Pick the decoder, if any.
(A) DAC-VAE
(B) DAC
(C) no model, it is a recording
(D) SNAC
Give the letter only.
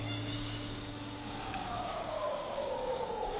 B